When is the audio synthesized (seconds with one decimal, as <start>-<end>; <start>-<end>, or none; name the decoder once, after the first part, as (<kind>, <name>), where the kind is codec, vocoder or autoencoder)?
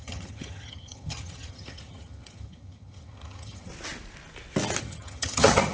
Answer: 0.0-3.7 (vocoder, HiFi-GAN); 4.8-5.7